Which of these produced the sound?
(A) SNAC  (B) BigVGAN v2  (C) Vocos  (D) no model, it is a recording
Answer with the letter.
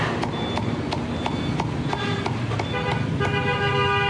D